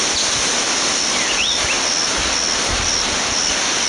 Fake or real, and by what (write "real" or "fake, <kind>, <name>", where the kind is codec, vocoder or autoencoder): real